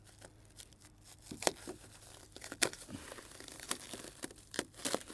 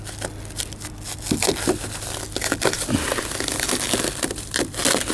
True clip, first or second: second